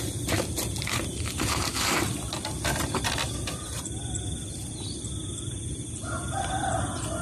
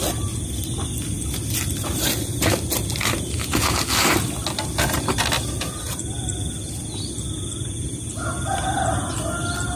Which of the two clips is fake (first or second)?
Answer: first